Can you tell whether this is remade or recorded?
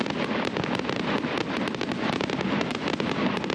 remade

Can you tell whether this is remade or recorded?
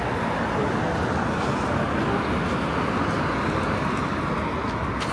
recorded